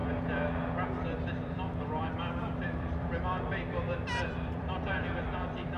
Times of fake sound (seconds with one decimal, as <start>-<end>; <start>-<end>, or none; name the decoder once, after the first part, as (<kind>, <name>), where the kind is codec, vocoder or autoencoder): 1.0-5.8 (vocoder, BigVGAN v2)